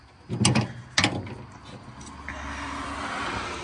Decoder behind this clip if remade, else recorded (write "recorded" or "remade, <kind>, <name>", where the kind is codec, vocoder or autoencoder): recorded